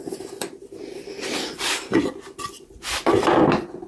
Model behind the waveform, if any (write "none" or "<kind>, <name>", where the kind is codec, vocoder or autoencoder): vocoder, BigVGAN v2